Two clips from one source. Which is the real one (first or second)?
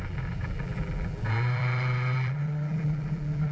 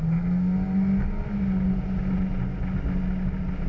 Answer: second